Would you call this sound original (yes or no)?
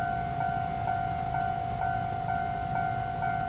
yes